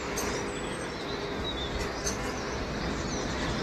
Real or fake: real